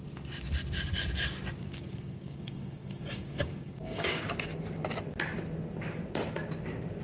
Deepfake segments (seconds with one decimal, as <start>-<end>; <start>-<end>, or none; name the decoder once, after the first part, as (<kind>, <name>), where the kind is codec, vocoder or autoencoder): 1.6-4.2 (codec, DAC)